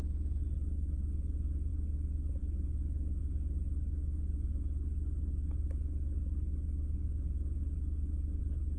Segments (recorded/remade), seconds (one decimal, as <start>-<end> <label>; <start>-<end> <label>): 0.0-8.8 recorded